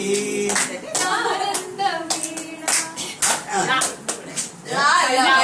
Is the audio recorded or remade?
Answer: recorded